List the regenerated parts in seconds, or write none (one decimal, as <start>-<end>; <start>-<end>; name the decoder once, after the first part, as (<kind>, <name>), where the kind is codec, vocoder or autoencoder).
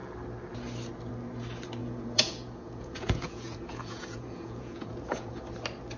1.8-5.4 (vocoder, Vocos)